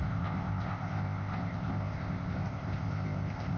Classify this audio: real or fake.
fake